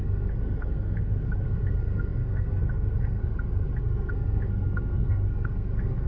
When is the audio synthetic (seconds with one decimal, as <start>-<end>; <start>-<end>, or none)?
0.0-3.2; 3.8-6.1